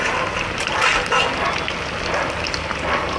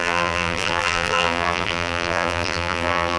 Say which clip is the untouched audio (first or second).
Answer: first